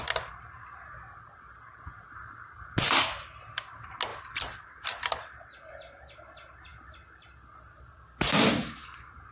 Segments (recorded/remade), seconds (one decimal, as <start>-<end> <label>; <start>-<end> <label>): 0.0-9.3 recorded